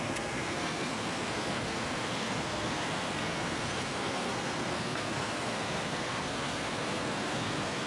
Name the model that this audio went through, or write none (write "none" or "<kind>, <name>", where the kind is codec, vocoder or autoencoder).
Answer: codec, SNAC